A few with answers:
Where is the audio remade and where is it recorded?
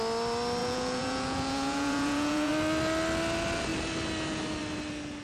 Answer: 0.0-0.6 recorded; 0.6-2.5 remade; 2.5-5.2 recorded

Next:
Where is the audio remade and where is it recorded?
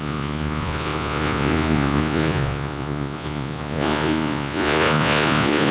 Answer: 0.0-5.7 remade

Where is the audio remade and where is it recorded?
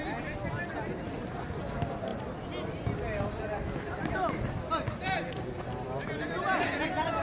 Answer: 0.0-7.2 recorded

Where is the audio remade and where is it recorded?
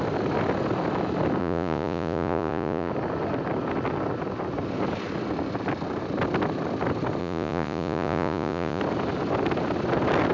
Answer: 0.0-1.4 recorded; 1.4-2.9 remade; 2.9-7.2 recorded; 7.2-8.8 remade; 8.8-10.3 recorded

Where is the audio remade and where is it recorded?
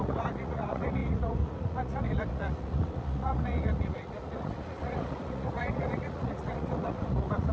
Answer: 0.0-7.5 remade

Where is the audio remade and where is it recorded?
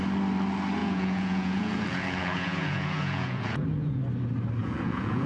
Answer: 0.0-0.8 recorded; 0.8-4.0 remade; 4.0-4.6 recorded; 4.6-5.3 remade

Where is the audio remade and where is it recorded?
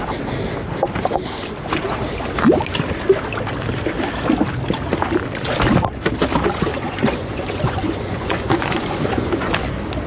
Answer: 0.0-6.7 recorded; 6.7-9.5 remade; 9.5-10.1 recorded